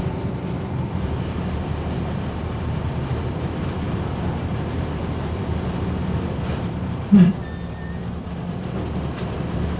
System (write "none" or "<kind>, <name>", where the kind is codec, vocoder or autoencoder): vocoder, BigVGAN v2